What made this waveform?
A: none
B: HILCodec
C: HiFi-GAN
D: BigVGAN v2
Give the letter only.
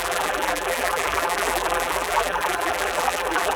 D